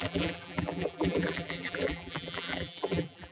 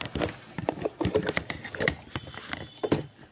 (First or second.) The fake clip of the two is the first